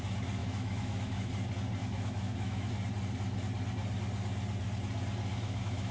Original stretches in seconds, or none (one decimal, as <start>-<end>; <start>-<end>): 0.0-0.4; 1.3-1.8; 2.7-5.3

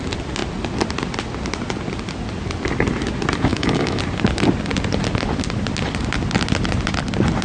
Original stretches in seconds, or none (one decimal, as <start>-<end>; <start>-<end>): 0.0-3.5; 4.0-7.4

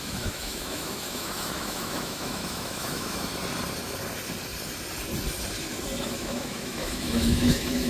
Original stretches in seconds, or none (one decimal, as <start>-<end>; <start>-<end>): 3.3-6.0

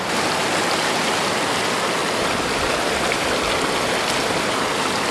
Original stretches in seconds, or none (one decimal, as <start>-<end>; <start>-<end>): 0.0-5.1

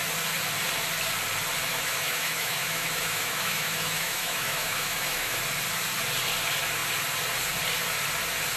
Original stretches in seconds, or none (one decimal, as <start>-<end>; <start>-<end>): 0.0-1.7; 5.4-8.6